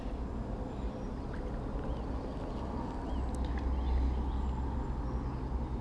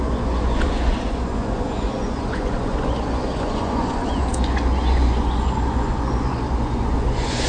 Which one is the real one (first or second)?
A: first